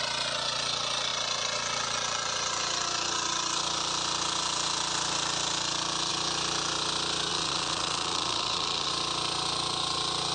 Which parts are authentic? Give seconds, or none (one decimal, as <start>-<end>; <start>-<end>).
0.0-7.3; 8.9-10.3